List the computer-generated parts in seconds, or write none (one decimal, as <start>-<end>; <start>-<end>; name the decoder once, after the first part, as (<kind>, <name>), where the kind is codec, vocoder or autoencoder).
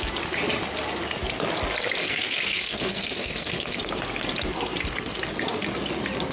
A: 2.0-4.0 (codec, SNAC)